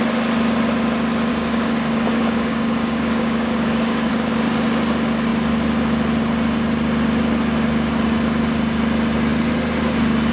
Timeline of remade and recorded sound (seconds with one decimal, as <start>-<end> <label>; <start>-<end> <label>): 0.0-1.3 recorded; 1.3-4.1 remade; 4.1-10.3 recorded